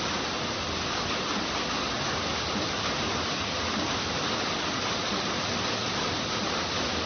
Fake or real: real